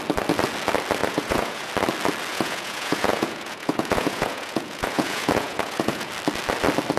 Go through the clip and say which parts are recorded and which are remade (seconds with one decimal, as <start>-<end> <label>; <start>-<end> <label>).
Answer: 0.0-1.0 recorded; 1.0-1.7 remade; 1.7-2.3 recorded; 2.3-6.1 remade; 6.1-7.0 recorded